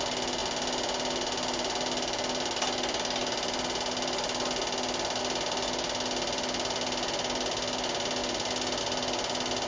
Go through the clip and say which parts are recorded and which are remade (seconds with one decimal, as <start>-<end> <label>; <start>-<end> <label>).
0.0-9.7 recorded